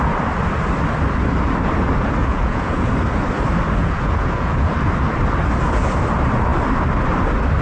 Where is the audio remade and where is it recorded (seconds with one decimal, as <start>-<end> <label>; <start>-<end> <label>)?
0.0-2.2 recorded; 2.2-2.9 remade; 2.9-3.8 recorded; 3.8-4.7 remade; 4.7-7.6 recorded